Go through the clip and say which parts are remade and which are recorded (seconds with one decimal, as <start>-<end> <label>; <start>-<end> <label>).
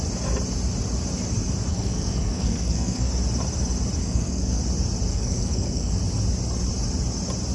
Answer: 0.0-1.7 recorded; 1.7-3.1 remade; 3.1-4.0 recorded; 4.0-4.6 remade; 4.6-5.1 recorded; 5.1-5.9 remade; 5.9-7.5 recorded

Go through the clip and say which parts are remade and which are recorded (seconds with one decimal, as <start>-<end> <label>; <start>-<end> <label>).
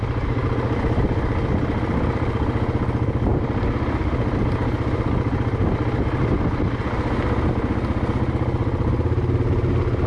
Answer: 0.0-10.1 recorded